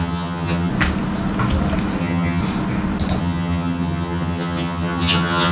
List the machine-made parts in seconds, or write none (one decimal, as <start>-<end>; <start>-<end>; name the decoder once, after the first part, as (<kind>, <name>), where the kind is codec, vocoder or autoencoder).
0.0-0.7 (vocoder, HiFi-GAN); 2.0-2.4; 3.2-5.5